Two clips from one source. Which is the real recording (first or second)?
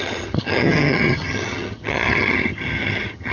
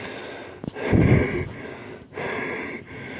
second